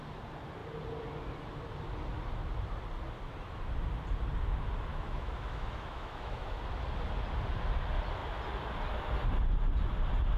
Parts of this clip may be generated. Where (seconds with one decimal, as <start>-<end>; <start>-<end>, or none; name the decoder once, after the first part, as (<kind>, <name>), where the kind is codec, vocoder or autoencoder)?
4.9-6.6 (autoencoder, DAC-VAE)